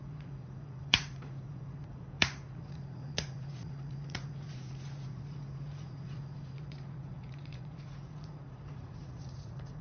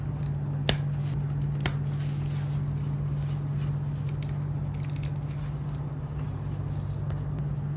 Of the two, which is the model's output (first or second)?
first